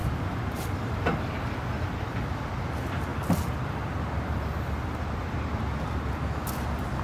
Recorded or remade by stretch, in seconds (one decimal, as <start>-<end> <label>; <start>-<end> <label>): 0.0-2.0 recorded; 2.0-7.0 remade